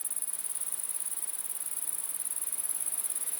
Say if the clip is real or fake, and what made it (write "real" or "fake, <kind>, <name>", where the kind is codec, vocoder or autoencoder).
real